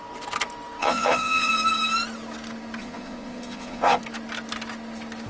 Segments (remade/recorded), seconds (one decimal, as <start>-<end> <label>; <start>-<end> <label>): 0.0-0.8 recorded; 0.8-1.5 remade; 1.5-2.8 recorded; 2.8-4.0 remade; 4.0-5.3 recorded